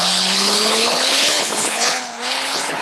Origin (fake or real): fake